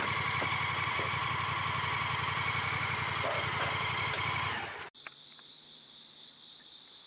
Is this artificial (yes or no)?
yes